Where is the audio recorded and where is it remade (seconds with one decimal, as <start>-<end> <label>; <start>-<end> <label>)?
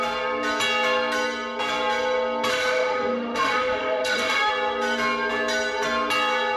0.0-2.5 recorded; 2.5-4.5 remade; 4.5-6.6 recorded